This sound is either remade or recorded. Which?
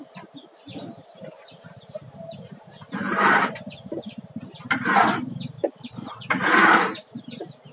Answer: remade